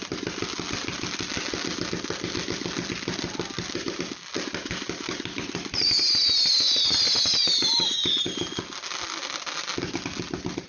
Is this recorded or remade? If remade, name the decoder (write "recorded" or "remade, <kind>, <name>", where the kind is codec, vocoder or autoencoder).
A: recorded